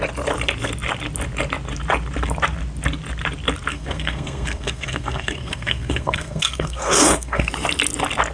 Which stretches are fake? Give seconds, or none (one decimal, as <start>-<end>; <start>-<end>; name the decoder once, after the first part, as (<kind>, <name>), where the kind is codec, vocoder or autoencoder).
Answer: 3.7-7.5 (codec, SNAC)

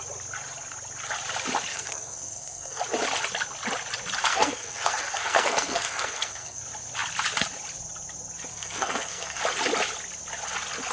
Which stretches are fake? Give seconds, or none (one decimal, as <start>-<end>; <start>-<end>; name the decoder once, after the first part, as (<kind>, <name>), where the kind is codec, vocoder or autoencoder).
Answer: 1.7-2.8 (codec, SNAC); 4.2-6.6; 8.5-9.4

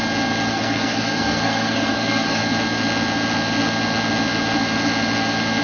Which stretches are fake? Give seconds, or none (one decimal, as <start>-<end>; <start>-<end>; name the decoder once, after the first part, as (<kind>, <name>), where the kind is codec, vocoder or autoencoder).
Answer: 0.5-2.4 (codec, SNAC)

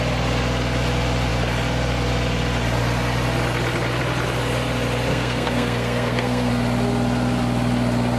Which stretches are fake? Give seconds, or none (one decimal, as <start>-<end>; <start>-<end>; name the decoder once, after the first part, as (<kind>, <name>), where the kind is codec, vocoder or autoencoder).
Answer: 5.1-6.5 (codec, SNAC)

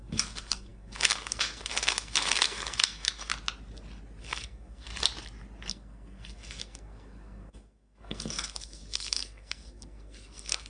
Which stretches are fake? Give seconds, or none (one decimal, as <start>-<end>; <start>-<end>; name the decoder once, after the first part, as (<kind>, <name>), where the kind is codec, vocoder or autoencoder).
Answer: 0.0-3.3 (codec, SNAC); 4.2-4.9; 5.7-10.7

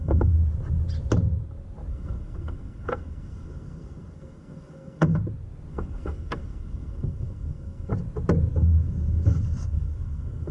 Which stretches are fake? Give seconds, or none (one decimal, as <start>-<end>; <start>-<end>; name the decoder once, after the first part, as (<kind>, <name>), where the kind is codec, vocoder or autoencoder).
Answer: 0.0-0.4 (codec, SNAC); 1.9-5.2; 5.7-7.9; 8.5-10.5